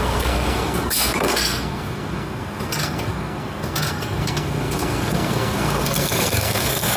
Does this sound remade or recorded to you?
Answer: remade